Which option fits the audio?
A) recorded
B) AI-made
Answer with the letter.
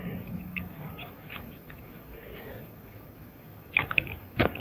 B